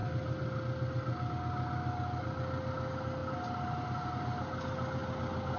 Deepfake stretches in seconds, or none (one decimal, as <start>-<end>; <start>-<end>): none